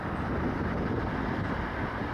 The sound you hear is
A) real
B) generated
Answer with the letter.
A